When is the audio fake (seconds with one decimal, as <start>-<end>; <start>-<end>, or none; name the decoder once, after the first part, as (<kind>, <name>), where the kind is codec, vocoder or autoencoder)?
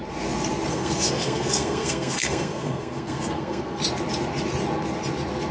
0.7-3.8 (codec, SNAC)